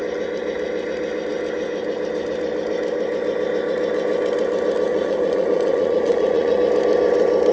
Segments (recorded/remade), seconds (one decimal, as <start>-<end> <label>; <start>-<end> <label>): 0.0-4.9 recorded; 4.9-6.6 remade; 6.6-7.5 recorded